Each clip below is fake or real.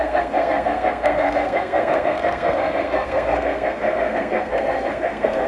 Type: fake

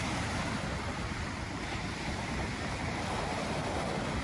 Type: real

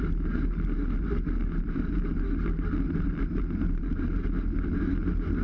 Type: real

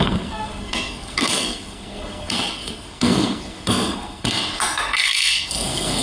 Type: fake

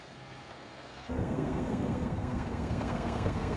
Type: fake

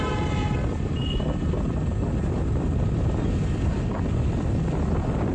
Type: real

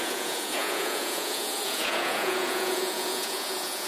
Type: fake